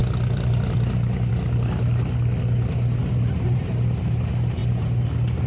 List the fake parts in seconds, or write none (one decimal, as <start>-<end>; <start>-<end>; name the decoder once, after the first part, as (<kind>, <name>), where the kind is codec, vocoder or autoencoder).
0.0-1.3 (vocoder, BigVGAN v2); 3.0-3.7

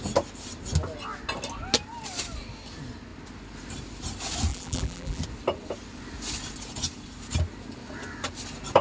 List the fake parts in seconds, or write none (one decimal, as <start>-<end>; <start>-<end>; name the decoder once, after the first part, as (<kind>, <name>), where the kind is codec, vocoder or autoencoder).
4.5-5.2 (vocoder, BigVGAN v2)

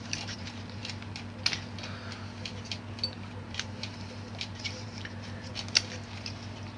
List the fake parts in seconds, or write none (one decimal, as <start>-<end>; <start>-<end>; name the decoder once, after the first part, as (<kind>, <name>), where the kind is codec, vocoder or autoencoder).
0.0-0.8 (vocoder, BigVGAN v2); 3.3-5.5